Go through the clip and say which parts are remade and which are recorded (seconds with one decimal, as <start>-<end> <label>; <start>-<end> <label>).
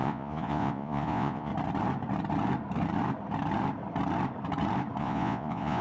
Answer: 0.0-1.5 remade; 1.5-5.0 recorded; 5.0-5.8 remade